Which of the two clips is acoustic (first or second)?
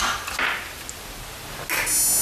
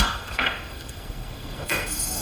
first